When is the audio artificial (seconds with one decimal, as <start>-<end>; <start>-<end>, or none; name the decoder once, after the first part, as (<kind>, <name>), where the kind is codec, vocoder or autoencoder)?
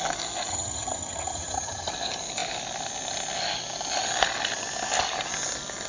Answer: 0.5-1.9 (vocoder, HiFi-GAN)